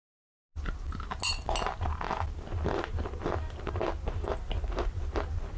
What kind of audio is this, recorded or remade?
recorded